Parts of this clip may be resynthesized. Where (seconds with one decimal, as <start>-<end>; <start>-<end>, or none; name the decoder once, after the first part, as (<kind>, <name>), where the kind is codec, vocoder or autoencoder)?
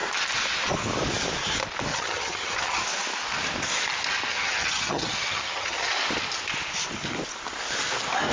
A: 1.9-2.8 (vocoder, HiFi-GAN); 4.3-5.9